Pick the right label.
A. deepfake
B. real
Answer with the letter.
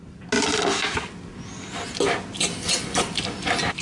B